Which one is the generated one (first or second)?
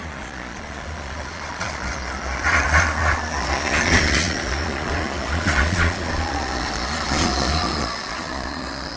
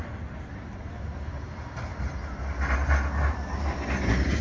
first